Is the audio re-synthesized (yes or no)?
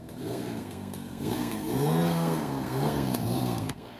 yes